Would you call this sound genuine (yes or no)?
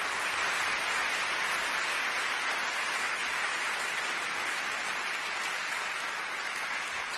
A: yes